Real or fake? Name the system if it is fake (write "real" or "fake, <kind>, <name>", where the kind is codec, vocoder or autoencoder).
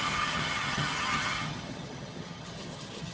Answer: fake, vocoder, HiFi-GAN